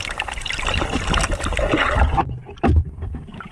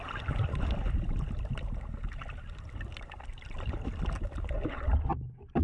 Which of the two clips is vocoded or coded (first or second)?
first